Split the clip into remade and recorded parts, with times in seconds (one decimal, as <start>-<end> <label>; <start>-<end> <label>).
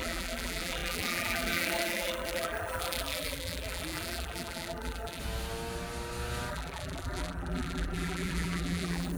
0.0-5.2 remade; 5.2-6.5 recorded; 6.5-9.2 remade